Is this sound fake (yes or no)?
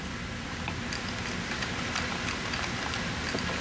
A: no